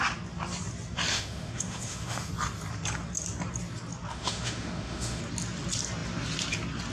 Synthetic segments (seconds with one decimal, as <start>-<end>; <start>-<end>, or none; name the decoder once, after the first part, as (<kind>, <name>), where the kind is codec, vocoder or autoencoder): 1.1-2.3 (autoencoder, DAC-VAE); 4.1-5.2